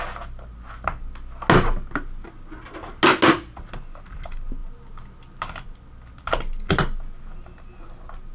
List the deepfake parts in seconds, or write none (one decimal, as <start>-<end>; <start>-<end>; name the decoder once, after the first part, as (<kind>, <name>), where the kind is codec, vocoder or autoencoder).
none